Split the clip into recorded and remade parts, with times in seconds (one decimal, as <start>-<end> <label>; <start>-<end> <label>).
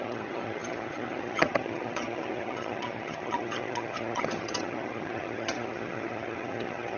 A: 0.0-7.0 remade